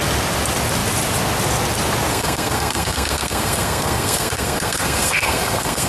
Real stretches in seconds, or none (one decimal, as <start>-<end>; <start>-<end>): 0.0-2.1